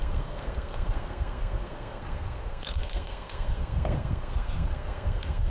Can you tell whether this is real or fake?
fake